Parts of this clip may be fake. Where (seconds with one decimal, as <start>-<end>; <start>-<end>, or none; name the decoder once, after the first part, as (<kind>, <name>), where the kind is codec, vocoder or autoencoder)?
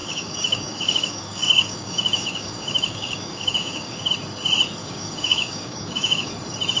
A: 0.0-4.1 (codec, DAC); 4.8-6.3